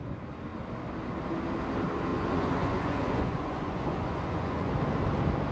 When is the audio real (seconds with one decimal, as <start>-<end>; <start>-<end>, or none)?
0.0-2.1; 4.7-5.5